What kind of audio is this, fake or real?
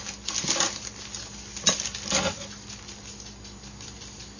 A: real